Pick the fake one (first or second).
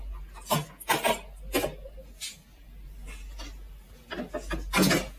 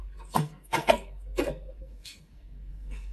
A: second